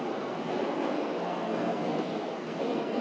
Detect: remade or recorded remade